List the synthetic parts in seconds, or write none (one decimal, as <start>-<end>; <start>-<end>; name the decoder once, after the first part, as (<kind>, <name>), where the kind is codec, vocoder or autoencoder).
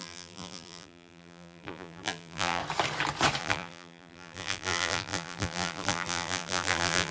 0.0-2.6 (vocoder, BigVGAN v2); 3.4-7.1